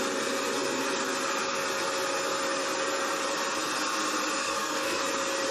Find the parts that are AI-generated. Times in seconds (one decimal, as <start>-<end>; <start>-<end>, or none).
4.4-5.0

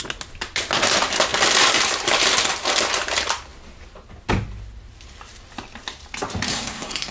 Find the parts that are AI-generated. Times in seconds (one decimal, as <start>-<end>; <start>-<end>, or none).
6.5-7.1

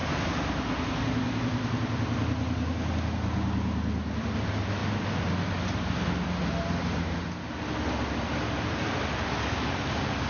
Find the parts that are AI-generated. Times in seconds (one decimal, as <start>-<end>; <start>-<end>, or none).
none

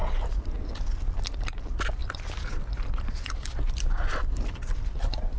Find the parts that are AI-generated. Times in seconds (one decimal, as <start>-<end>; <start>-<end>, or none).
none

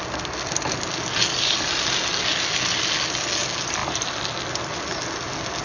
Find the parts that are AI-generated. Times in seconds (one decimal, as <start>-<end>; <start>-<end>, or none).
none

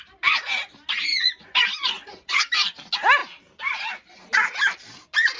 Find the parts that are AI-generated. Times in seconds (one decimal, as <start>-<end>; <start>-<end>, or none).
1.1-2.4

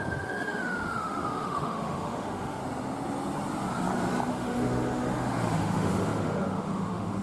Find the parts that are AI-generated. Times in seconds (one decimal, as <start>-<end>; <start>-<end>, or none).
0.0-2.6; 4.3-7.2